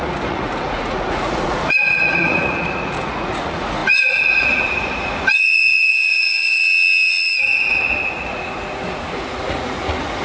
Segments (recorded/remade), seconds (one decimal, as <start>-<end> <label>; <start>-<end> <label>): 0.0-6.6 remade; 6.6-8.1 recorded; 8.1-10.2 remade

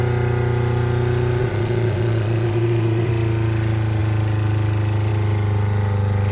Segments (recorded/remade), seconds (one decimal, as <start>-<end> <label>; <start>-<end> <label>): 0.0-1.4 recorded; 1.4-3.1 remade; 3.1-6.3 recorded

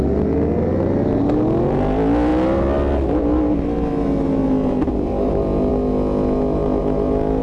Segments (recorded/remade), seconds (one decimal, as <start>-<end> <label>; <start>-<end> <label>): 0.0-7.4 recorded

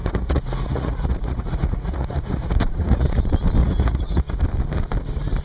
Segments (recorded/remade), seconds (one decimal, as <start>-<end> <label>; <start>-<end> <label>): 0.0-3.2 remade; 3.2-3.6 recorded; 3.6-4.4 remade; 4.4-5.4 recorded